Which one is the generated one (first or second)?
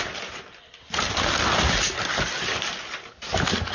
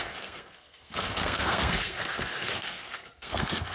second